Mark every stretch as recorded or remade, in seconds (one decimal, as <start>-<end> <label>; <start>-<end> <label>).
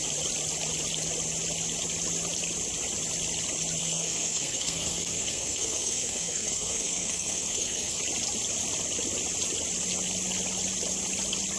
0.0-3.8 recorded; 3.8-8.0 remade; 8.0-11.6 recorded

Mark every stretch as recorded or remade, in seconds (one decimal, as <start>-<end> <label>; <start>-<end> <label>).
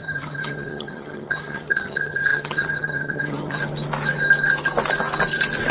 0.0-3.6 remade; 3.6-5.7 recorded